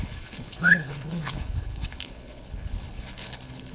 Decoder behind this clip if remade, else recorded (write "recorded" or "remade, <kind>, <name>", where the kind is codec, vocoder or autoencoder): remade, codec, HILCodec